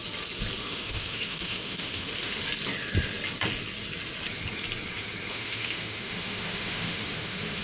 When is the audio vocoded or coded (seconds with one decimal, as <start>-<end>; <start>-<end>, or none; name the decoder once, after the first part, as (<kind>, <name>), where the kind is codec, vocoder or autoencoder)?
0.6-2.4 (autoencoder, DAC-VAE); 5.3-7.6